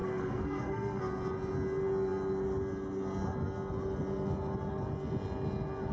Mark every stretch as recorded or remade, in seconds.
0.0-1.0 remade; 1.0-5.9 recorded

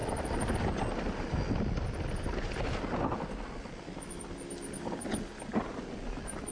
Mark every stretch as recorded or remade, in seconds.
0.0-6.5 recorded

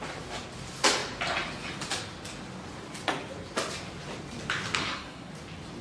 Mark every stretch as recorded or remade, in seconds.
0.0-4.8 recorded; 4.8-5.3 remade; 5.3-5.8 recorded

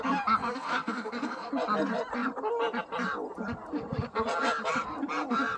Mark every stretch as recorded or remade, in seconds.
0.0-0.4 recorded; 0.4-1.5 remade; 1.5-5.6 recorded

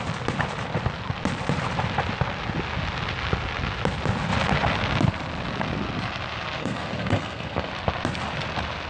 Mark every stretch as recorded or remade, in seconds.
0.0-6.6 recorded; 6.6-7.7 remade; 7.7-8.9 recorded

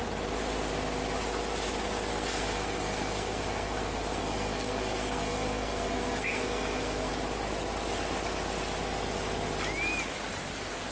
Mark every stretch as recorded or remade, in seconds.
0.0-2.1 recorded; 2.1-7.1 remade; 7.1-10.9 recorded

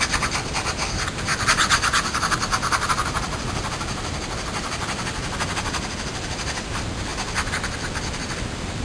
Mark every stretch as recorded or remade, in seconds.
0.0-8.8 recorded

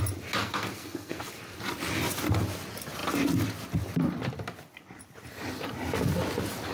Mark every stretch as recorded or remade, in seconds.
0.0-0.4 recorded; 0.4-1.3 remade; 1.3-6.7 recorded